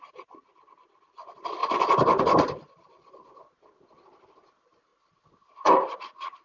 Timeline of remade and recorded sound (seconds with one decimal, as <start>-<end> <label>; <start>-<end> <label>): 0.0-6.4 recorded